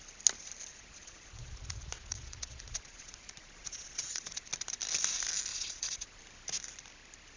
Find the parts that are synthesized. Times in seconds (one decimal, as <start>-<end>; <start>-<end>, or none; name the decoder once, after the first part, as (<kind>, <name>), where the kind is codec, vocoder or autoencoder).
0.7-4.5 (vocoder, Vocos); 5.5-6.2